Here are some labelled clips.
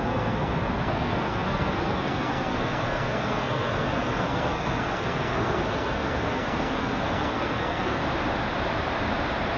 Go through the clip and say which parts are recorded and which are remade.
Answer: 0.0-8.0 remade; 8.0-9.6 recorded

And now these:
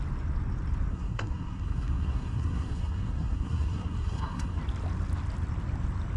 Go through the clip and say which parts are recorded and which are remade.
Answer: 0.0-0.9 recorded; 0.9-4.6 remade; 4.6-6.2 recorded

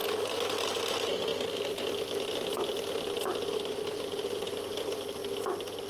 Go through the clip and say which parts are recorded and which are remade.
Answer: 0.0-5.9 recorded

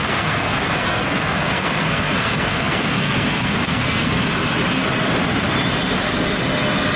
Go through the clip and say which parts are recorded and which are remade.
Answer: 0.0-4.2 remade; 4.2-7.0 recorded